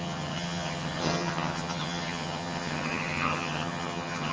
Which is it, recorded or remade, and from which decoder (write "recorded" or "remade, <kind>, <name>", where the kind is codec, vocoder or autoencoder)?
remade, vocoder, HiFi-GAN